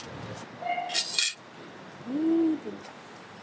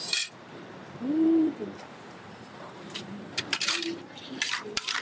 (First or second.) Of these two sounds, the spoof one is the second